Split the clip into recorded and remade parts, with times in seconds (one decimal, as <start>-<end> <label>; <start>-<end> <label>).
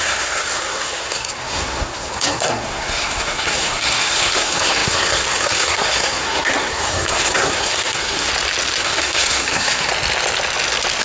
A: 0.0-8.3 remade; 8.3-8.8 recorded; 8.8-9.9 remade; 9.9-11.0 recorded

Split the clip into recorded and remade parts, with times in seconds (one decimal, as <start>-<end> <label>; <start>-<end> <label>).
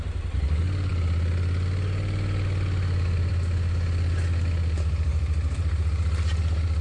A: 0.0-5.1 recorded; 5.1-6.8 remade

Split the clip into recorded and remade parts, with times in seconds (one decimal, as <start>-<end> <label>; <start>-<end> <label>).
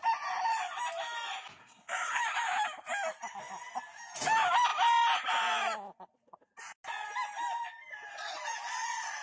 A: 0.0-1.6 recorded; 1.6-2.2 remade; 2.2-9.2 recorded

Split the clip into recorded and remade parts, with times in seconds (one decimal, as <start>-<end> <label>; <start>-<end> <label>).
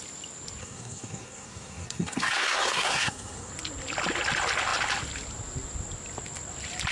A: 0.0-0.6 recorded; 0.6-3.5 remade; 3.5-6.9 recorded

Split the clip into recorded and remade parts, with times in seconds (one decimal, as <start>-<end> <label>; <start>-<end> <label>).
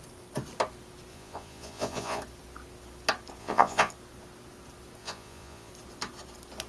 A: 0.0-1.1 recorded; 1.1-2.2 remade; 2.2-3.4 recorded; 3.4-3.9 remade; 3.9-5.0 recorded; 5.0-5.7 remade; 5.7-6.7 recorded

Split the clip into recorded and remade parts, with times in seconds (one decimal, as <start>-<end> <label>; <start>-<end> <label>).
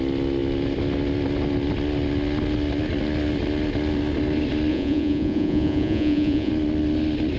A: 0.0-4.7 recorded; 4.7-6.5 remade; 6.5-7.4 recorded